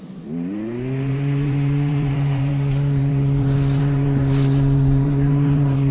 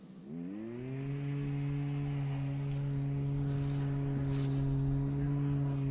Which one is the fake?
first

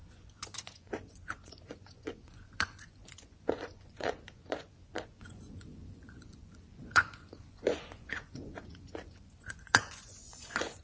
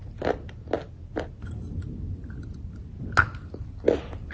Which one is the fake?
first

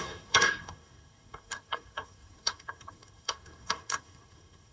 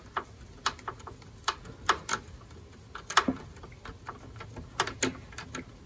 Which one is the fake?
first